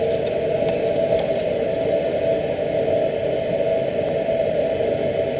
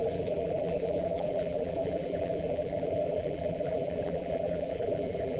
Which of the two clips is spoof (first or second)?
second